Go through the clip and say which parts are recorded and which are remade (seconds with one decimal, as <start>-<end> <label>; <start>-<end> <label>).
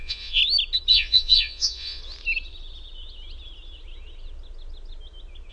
0.0-0.4 remade; 0.4-0.9 recorded; 0.9-2.0 remade; 2.0-5.5 recorded